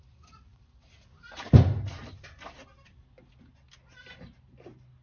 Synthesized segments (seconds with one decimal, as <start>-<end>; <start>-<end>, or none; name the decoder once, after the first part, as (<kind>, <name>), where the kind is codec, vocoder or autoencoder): none